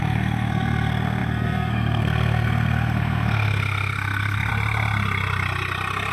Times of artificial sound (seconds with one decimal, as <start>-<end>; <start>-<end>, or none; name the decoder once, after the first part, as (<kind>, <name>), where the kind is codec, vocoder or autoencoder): 0.0-4.5 (codec, SNAC)